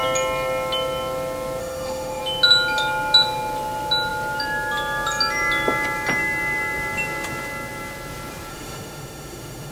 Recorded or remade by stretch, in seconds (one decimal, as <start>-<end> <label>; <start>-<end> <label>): 0.0-1.6 recorded; 1.6-2.2 remade; 2.2-8.5 recorded; 8.5-9.7 remade